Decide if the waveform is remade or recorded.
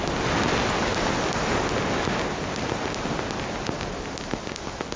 recorded